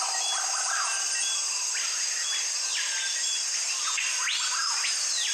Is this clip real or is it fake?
real